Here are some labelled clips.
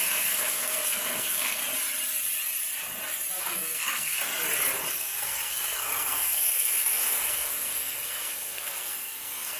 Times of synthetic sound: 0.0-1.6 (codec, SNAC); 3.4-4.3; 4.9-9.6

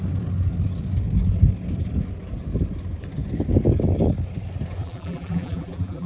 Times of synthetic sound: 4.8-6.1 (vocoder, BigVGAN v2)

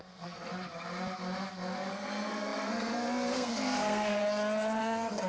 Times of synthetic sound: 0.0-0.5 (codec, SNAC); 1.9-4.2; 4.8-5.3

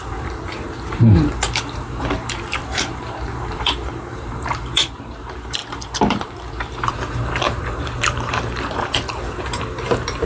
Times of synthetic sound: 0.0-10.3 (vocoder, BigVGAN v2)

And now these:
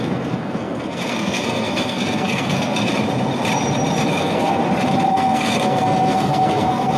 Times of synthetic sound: 0.0-2.9 (codec, SNAC); 4.1-4.6; 5.1-7.0

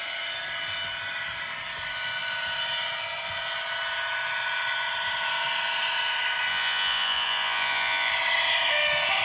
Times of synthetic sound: 6.5-8.1 (vocoder, Vocos)